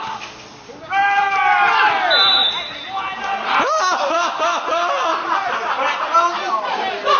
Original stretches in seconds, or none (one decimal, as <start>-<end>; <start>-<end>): 0.0-7.2